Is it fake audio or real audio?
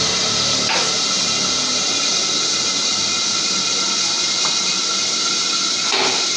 real